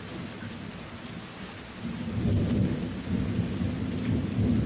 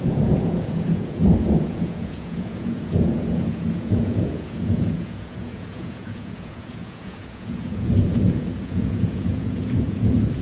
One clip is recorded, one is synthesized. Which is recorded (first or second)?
first